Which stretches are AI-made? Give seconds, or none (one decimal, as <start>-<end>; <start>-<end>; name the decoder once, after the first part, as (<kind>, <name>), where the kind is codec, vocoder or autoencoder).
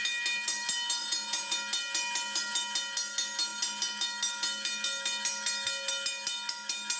1.0-1.5 (vocoder, Vocos)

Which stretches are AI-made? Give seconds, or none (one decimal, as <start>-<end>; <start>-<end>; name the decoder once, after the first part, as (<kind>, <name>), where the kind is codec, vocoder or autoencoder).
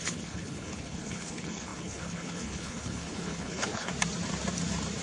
0.0-3.9 (codec, HILCodec)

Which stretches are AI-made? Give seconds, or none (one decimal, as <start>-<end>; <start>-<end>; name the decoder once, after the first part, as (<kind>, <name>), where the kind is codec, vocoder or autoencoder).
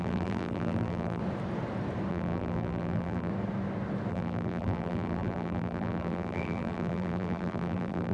0.0-1.2 (vocoder, BigVGAN v2); 2.1-3.3; 4.1-8.1